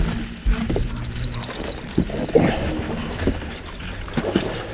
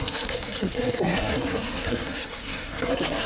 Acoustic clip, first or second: first